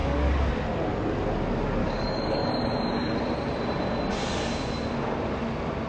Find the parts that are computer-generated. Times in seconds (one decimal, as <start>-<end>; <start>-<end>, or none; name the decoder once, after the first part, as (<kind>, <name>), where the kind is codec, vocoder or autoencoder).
0.0-0.5 (codec, DAC); 1.8-2.5